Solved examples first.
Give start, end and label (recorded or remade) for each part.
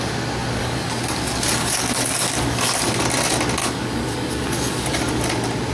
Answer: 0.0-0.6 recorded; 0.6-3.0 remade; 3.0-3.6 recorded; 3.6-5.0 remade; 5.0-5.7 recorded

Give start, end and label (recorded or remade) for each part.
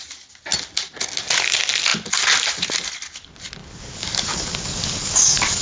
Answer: 0.0-3.6 recorded; 3.6-5.6 remade